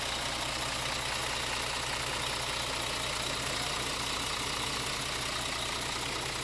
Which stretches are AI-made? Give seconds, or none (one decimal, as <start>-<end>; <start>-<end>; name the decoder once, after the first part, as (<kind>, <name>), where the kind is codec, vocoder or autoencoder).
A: none